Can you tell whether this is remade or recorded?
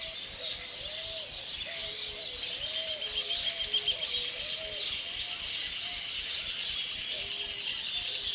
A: recorded